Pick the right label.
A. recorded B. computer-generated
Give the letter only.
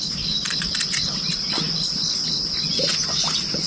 A